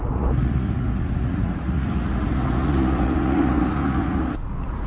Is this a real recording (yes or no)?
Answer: no